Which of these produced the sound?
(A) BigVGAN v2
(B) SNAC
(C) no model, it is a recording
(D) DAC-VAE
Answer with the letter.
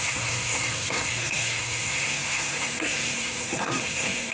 B